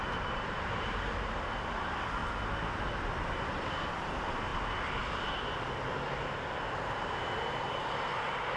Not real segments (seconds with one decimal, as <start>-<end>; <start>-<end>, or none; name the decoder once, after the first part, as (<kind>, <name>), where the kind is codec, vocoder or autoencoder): 0.0-2.2 (vocoder, BigVGAN v2); 2.7-4.5; 7.5-8.6